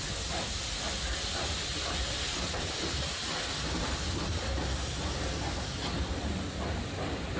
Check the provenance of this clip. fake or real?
real